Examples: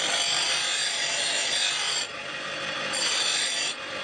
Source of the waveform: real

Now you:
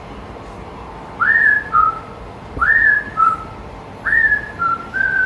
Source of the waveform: fake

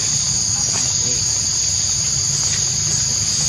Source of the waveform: real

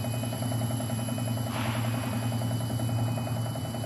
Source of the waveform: real